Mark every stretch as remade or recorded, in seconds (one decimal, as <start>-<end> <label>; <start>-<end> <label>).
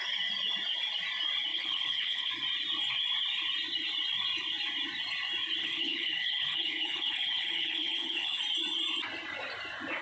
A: 0.0-1.5 recorded; 1.5-2.3 remade; 2.3-5.6 recorded; 5.6-8.4 remade; 8.4-10.0 recorded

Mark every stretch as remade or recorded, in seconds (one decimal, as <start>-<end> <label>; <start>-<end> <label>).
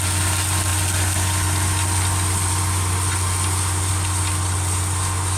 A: 0.0-5.4 recorded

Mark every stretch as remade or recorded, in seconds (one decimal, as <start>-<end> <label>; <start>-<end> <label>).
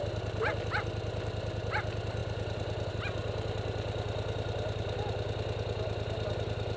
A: 0.0-6.8 recorded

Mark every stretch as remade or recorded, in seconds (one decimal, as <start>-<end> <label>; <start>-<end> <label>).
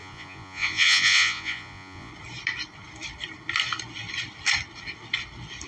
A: 0.0-2.1 remade; 2.1-5.7 recorded